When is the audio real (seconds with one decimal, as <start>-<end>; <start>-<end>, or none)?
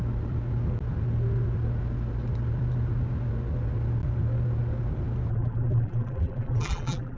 0.0-5.3